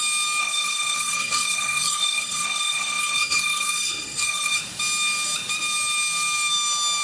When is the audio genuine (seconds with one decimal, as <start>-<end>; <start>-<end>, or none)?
0.0-0.4; 4.6-7.0